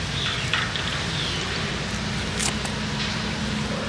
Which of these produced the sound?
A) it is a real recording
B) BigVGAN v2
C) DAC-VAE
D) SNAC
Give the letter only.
A